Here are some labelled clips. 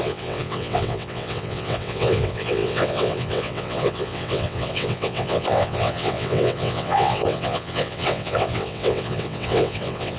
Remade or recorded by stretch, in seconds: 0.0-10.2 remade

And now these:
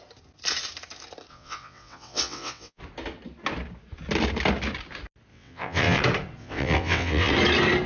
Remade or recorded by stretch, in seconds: 0.0-1.3 recorded; 1.3-2.8 remade; 2.8-5.3 recorded; 5.3-6.0 remade; 6.0-6.4 recorded; 6.4-7.3 remade; 7.3-7.9 recorded

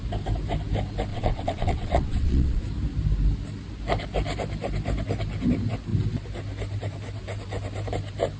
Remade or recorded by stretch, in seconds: 0.0-1.1 recorded; 1.1-2.6 remade; 2.6-8.4 recorded

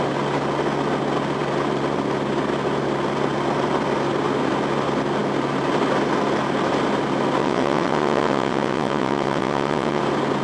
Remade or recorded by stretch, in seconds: 0.0-7.4 recorded; 7.4-10.0 remade; 10.0-10.4 recorded